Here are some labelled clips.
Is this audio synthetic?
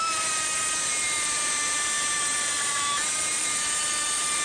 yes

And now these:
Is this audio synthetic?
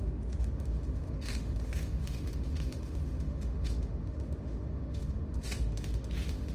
yes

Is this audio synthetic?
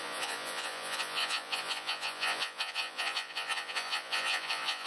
yes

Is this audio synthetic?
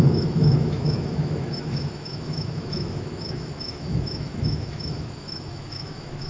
yes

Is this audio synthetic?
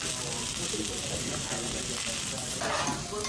no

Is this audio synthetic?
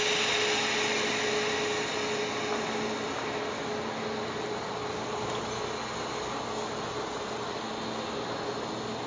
no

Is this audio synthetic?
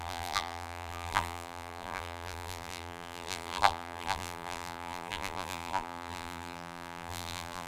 yes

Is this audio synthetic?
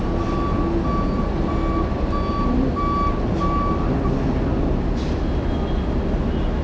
no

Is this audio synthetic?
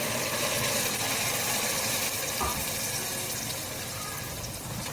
no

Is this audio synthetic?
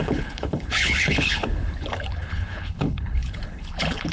yes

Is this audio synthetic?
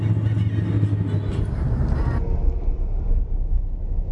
no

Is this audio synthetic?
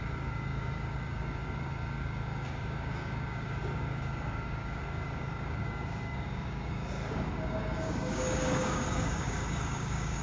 yes